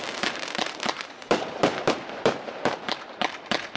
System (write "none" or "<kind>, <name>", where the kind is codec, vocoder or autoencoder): vocoder, BigVGAN v2